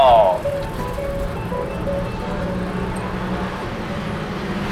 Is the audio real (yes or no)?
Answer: yes